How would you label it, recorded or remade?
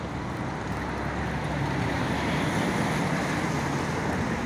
recorded